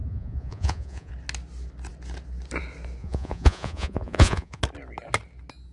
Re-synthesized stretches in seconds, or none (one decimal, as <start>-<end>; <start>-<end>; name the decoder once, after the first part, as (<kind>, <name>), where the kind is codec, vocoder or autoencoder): 0.0-1.1 (vocoder, Vocos); 3.0-4.6